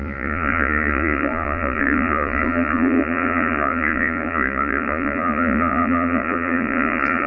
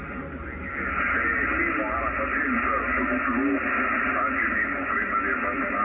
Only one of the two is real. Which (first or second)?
second